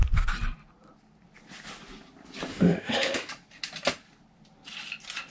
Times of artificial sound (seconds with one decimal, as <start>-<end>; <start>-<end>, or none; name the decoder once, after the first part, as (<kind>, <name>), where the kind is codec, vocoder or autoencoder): 2.5-3.3 (autoencoder, DAC-VAE)